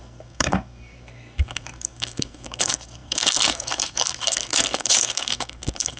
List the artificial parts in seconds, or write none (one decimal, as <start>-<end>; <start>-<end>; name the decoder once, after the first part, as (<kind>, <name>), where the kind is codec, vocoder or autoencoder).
0.0-6.0 (codec, SNAC)